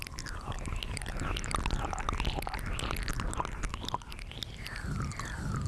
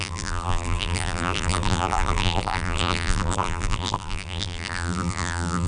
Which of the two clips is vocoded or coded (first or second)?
second